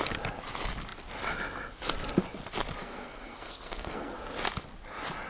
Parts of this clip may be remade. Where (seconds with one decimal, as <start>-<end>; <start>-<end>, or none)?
2.8-4.2